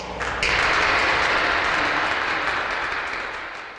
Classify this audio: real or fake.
real